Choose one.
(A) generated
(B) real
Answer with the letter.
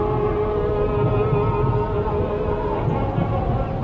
B